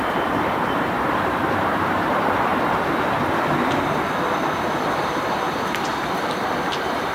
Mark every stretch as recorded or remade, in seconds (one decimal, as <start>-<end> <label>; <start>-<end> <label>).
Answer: 0.0-2.5 remade; 2.5-6.6 recorded; 6.6-7.1 remade